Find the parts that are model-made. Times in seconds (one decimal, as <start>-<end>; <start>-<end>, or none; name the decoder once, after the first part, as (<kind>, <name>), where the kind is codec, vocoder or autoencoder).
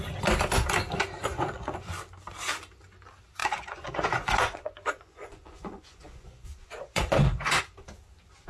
1.3-1.9 (vocoder, Vocos); 3.4-7.6